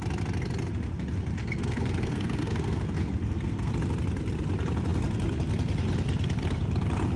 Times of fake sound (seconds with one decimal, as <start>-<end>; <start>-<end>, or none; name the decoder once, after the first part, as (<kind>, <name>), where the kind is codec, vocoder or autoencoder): 1.4-3.7 (codec, SNAC)